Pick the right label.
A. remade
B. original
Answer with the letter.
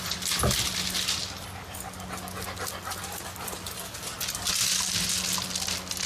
B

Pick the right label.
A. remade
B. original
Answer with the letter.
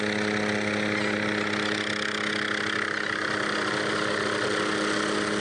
B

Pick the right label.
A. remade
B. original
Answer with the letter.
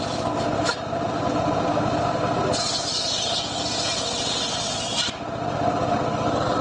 B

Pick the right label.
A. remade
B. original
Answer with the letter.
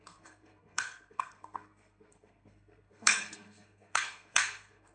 A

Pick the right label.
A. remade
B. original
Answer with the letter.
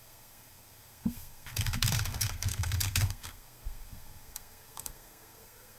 A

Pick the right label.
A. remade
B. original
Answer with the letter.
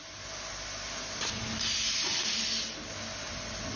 B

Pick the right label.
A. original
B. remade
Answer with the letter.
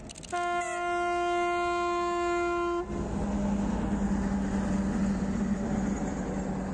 A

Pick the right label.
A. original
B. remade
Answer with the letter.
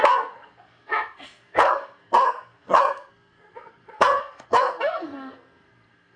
B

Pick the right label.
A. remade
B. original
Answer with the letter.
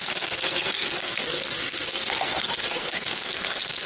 A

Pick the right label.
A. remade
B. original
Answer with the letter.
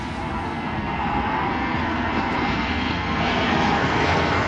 A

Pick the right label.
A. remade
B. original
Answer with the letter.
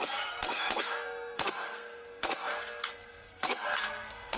A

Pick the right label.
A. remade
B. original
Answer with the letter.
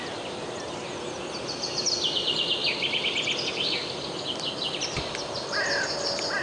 B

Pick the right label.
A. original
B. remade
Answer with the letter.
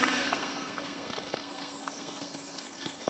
B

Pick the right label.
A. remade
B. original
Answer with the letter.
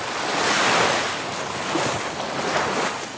B